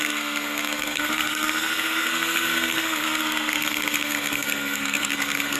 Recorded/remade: remade